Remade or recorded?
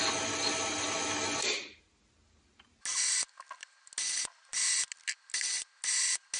recorded